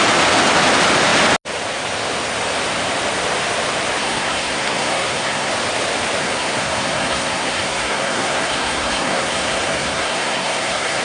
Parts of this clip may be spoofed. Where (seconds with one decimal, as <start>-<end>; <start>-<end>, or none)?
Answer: 4.0-5.5; 6.2-11.0